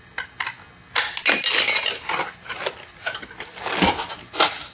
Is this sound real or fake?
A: real